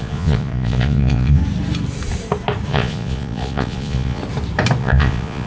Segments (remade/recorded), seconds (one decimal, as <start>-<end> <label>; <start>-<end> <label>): 0.0-1.4 remade; 1.4-2.7 recorded; 2.7-4.2 remade; 4.2-4.8 recorded; 4.8-5.5 remade